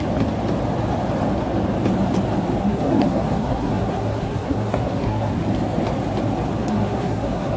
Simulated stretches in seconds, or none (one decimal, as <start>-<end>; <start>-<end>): 2.6-5.4; 6.6-7.6